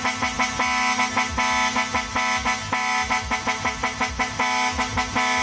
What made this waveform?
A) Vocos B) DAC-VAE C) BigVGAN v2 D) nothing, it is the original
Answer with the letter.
D